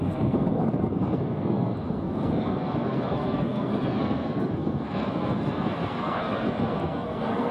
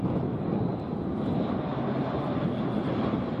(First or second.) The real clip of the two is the second